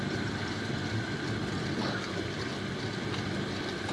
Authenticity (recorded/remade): remade